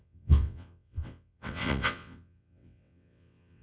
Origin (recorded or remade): remade